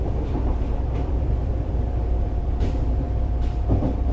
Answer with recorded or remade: remade